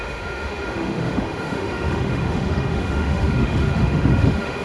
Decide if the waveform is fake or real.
fake